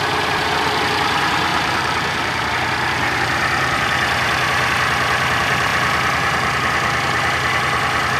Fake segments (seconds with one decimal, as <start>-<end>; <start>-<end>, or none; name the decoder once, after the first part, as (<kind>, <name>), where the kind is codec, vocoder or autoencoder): 1.5-2.5 (vocoder, BigVGAN v2)